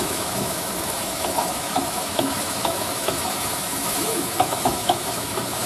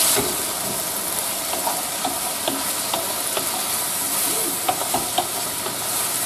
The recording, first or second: second